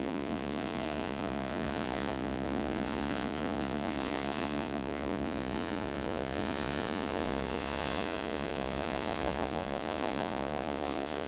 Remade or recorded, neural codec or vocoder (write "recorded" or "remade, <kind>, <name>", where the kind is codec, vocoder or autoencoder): remade, vocoder, Vocos